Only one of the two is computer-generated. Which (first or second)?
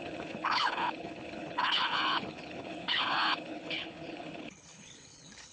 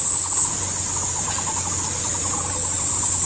first